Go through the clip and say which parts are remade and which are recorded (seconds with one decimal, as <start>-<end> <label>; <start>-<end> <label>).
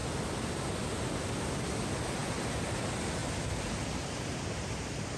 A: 0.0-5.2 recorded